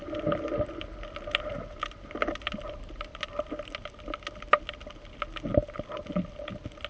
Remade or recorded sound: recorded